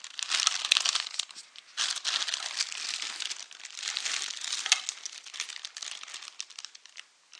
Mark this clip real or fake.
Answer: real